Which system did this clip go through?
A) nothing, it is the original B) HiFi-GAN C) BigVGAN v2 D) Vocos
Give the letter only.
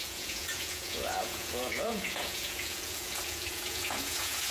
D